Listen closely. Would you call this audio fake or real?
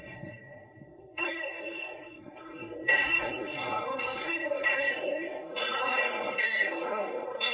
fake